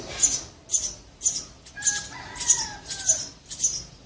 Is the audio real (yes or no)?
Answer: yes